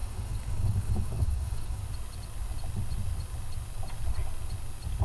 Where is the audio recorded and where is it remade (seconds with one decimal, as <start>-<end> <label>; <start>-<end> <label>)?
0.0-1.8 remade; 1.8-5.0 recorded